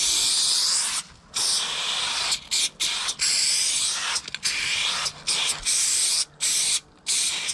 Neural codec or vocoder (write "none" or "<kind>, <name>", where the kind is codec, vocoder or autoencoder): none